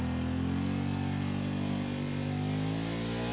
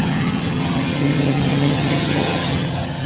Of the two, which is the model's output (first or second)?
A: second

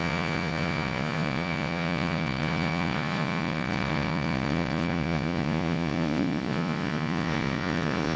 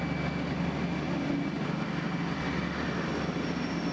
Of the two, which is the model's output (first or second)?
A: first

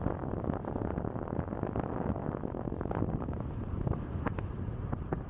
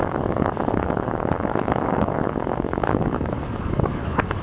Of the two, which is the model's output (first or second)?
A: second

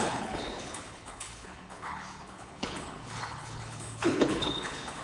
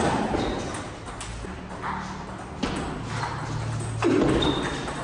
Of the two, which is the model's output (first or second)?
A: first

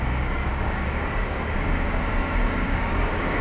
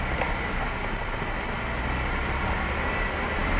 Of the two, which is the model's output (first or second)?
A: first